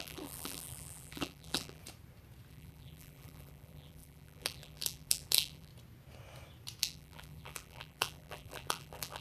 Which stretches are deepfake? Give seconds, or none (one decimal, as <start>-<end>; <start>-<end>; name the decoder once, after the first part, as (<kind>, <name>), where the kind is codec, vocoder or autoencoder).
0.0-1.8 (vocoder, BigVGAN v2); 2.5-5.7; 6.8-9.2